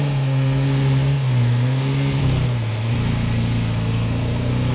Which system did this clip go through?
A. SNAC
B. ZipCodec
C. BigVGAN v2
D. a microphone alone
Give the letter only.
A